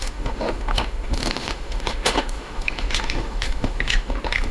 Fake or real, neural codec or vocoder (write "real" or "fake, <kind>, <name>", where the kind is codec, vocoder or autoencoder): fake, autoencoder, DAC-VAE